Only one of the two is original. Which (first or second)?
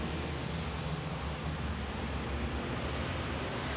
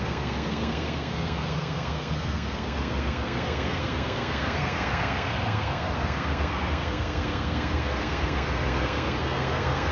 first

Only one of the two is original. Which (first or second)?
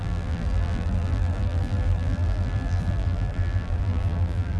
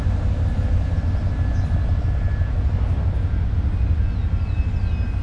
second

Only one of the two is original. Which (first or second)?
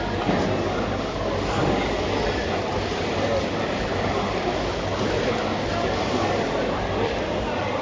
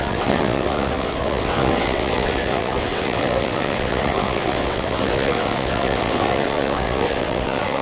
first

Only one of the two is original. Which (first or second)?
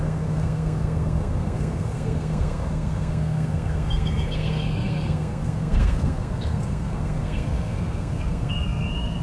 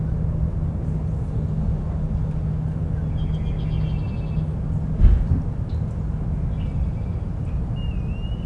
second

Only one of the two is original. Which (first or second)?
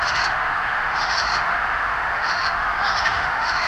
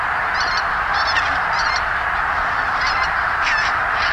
second